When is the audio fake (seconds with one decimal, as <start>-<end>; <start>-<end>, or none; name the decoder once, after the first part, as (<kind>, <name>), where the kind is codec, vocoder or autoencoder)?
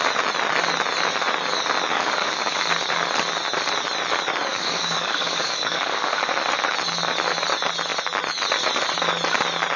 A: 1.9-2.7 (codec, DAC); 4.5-6.3